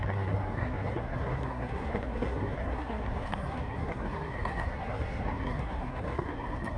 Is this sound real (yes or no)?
no